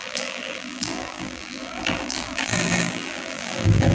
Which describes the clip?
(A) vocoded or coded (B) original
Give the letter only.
A